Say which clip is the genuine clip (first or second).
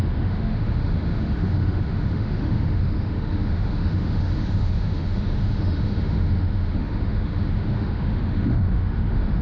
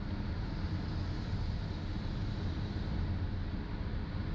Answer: second